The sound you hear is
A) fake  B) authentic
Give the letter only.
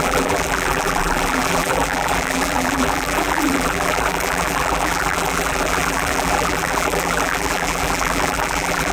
A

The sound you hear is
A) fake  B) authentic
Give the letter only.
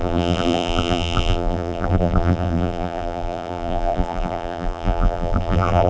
A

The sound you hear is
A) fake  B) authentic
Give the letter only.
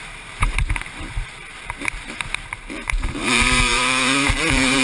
A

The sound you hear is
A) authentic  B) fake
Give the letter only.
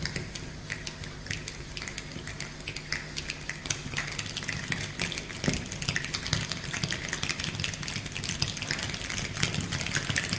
A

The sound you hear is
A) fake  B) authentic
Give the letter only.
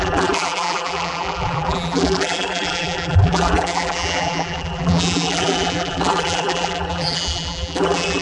A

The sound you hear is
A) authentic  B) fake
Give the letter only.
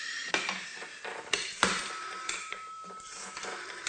B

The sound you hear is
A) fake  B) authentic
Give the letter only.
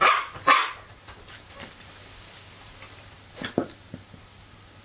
A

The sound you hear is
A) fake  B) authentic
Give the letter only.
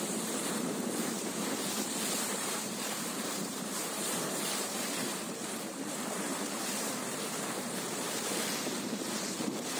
A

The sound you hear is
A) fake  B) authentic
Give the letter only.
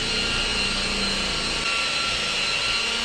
B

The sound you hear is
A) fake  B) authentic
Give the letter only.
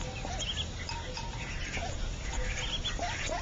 B